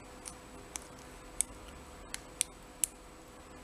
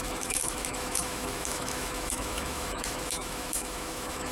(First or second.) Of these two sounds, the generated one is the second